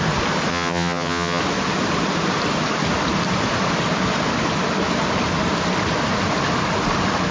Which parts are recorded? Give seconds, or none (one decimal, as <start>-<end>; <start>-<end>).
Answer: 0.0-0.5; 1.4-7.3